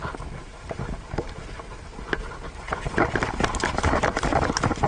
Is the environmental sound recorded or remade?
recorded